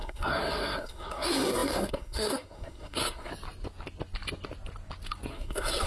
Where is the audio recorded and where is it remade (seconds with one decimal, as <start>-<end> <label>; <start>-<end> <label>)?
0.0-3.3 remade; 3.3-5.3 recorded; 5.3-5.9 remade